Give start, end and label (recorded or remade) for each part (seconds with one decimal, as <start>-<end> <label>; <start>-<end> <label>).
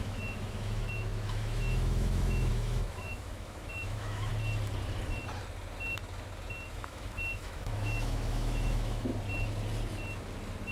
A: 0.0-4.3 remade; 4.3-6.7 recorded; 6.7-9.1 remade; 9.1-10.7 recorded